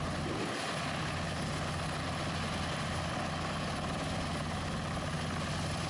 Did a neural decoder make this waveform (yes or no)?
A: no